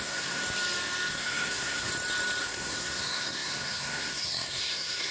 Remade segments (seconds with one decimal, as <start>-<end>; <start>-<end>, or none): 0.0-0.4; 1.1-1.9; 2.4-5.1